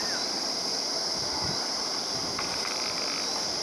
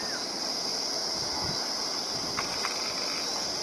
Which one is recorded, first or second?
second